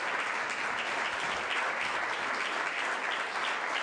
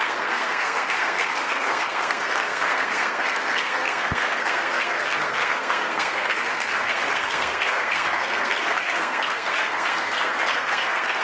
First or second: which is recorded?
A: first